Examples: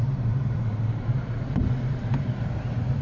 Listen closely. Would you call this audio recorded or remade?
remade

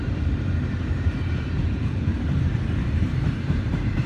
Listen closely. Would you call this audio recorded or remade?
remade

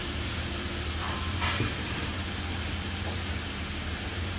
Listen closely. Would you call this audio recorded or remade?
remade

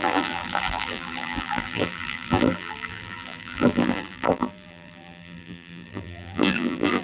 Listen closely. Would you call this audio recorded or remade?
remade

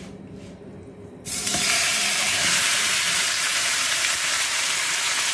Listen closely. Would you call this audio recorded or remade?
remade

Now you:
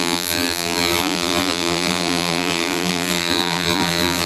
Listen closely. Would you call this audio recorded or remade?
remade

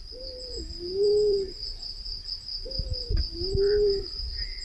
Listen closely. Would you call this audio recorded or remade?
remade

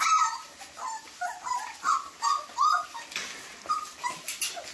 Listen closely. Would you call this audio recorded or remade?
recorded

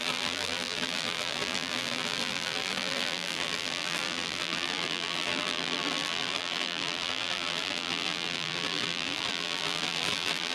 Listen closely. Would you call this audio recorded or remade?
remade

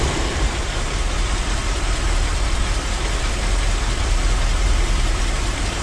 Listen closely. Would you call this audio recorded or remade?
remade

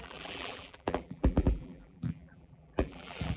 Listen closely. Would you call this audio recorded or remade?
remade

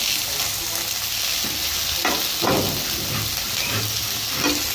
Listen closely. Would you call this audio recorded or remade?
recorded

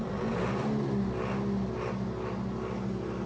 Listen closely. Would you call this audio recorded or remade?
recorded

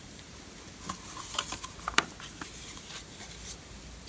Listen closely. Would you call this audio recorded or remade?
remade